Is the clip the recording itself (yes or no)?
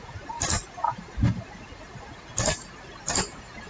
yes